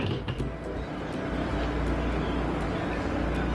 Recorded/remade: recorded